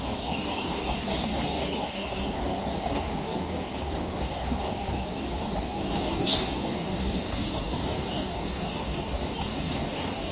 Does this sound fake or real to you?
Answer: fake